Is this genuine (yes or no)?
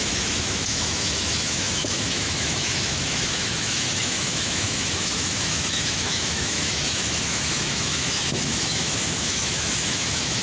no